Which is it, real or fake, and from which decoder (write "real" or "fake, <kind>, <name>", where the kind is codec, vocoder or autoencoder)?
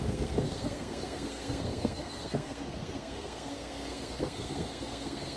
fake, codec, SNAC